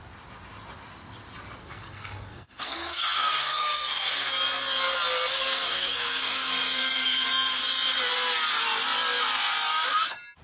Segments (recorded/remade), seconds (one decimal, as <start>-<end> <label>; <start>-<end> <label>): 0.0-1.6 recorded; 1.6-4.3 remade; 4.3-5.3 recorded; 5.3-7.6 remade; 7.6-10.4 recorded